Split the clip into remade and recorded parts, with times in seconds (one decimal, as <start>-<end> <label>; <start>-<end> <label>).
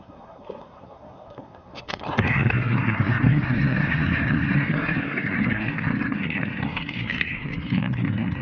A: 0.0-8.4 remade